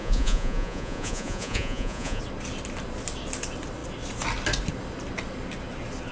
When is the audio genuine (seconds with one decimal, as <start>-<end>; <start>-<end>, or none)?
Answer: 2.2-6.1

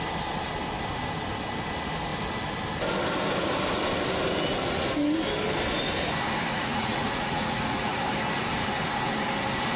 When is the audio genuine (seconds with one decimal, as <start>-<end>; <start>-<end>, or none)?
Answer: 0.0-6.5; 8.0-9.8